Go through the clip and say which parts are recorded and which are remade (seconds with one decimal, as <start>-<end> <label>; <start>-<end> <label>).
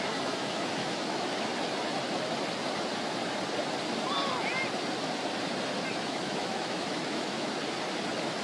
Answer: 0.0-1.5 remade; 1.5-5.9 recorded; 5.9-7.6 remade; 7.6-8.4 recorded